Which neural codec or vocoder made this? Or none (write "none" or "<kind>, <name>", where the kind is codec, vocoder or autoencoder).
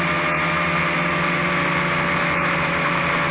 none